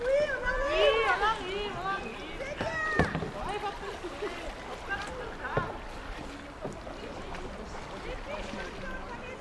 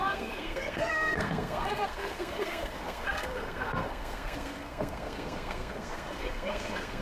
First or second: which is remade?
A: second